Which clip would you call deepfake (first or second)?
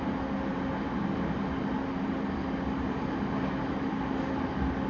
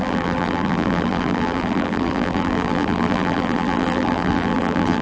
second